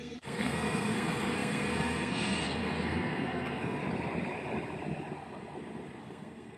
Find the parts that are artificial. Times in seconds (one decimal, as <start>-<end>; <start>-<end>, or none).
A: 0.0-3.8; 6.0-6.6